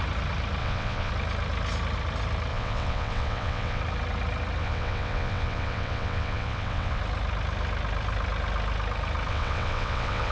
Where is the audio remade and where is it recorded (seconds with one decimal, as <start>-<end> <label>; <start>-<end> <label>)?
0.0-0.6 recorded; 0.6-1.1 remade; 1.1-2.5 recorded; 2.5-3.8 remade; 3.8-4.6 recorded; 4.6-7.0 remade; 7.0-9.3 recorded; 9.3-10.3 remade